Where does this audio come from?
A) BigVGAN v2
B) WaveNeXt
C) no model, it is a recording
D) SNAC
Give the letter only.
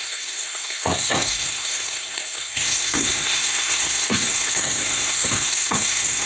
D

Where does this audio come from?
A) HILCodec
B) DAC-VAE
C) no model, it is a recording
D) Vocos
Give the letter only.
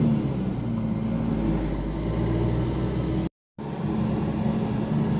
C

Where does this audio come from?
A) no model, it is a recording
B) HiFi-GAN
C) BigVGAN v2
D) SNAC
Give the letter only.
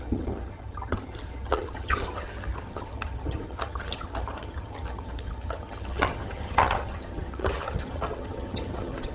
B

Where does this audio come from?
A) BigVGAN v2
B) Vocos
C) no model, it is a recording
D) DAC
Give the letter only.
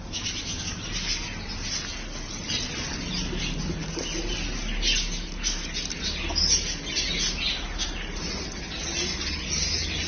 C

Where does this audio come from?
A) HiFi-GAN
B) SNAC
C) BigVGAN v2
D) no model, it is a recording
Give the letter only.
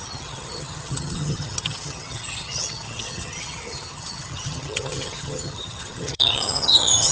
A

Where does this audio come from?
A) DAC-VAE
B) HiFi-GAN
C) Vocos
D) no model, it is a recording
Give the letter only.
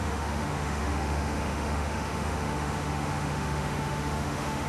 A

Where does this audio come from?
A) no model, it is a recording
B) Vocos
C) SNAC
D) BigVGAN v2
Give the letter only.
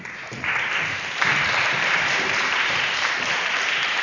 D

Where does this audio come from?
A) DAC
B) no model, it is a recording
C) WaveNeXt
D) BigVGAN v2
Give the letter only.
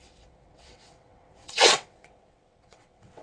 C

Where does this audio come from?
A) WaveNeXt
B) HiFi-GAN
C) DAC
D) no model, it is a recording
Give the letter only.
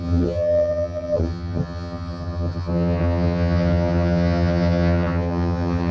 B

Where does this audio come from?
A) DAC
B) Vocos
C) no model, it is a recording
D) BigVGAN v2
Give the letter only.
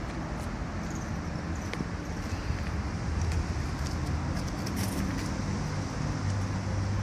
C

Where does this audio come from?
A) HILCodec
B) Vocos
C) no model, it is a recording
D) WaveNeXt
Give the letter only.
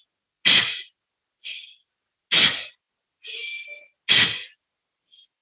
C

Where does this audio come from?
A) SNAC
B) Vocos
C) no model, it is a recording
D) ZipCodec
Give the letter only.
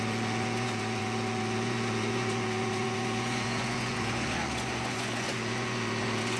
B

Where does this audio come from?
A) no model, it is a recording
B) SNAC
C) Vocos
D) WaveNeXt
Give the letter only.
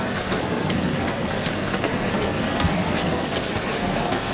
B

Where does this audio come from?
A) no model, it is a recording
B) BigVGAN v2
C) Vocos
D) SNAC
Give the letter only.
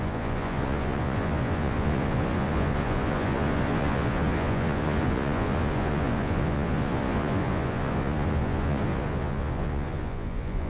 C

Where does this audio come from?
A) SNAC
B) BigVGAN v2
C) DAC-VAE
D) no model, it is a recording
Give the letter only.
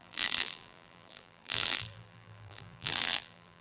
B